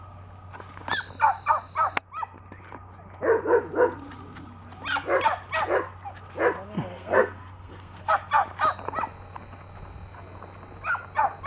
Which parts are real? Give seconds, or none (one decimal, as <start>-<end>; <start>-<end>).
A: 0.0-6.9; 8.1-11.5